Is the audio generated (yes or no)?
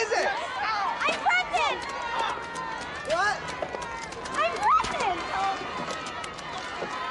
no